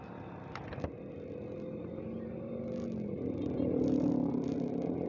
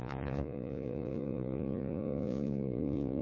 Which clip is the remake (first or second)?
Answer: second